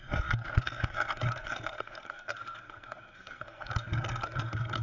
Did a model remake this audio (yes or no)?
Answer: yes